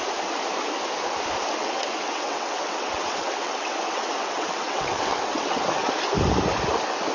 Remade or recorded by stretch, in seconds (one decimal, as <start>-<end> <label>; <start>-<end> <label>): 0.0-1.6 recorded; 1.6-5.9 remade; 5.9-7.1 recorded